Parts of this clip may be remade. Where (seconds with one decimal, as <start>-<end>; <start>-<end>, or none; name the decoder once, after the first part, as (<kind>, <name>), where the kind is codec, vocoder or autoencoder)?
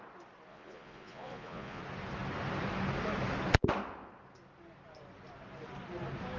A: 0.5-1.8 (vocoder, Vocos)